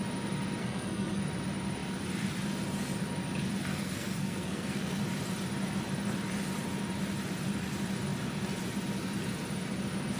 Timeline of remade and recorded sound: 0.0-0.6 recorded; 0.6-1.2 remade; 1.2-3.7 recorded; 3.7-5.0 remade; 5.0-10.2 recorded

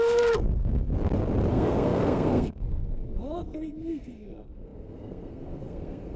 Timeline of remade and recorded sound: 0.0-0.9 remade; 0.9-1.5 recorded; 1.5-6.2 remade

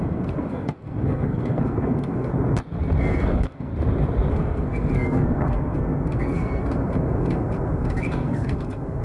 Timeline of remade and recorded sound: 0.0-2.3 remade; 2.3-3.0 recorded; 3.0-3.7 remade; 3.7-4.3 recorded; 4.3-9.0 remade

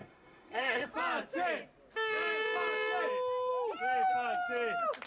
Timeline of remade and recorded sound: 0.0-0.9 remade; 0.9-5.1 recorded